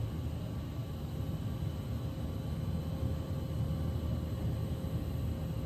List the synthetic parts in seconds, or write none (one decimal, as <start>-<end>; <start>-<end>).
none

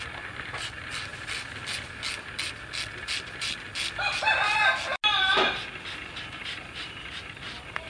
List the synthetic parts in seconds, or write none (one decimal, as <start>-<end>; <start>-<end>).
none